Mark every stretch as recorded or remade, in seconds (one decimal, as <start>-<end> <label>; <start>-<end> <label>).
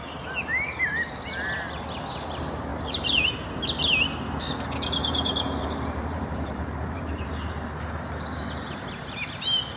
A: 0.0-2.7 recorded; 2.7-3.2 remade; 3.2-5.0 recorded; 5.0-7.3 remade; 7.3-9.8 recorded